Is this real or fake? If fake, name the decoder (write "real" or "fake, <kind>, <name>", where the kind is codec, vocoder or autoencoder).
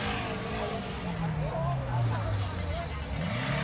real